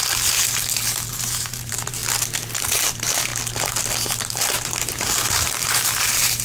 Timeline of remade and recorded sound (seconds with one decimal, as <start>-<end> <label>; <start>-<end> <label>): 0.0-1.1 recorded; 1.1-2.0 remade; 2.0-2.6 recorded; 2.6-3.3 remade; 3.3-4.2 recorded; 4.2-6.4 remade